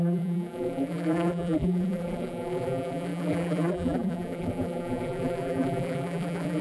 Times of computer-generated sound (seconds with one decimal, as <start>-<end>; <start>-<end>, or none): 0.0-6.6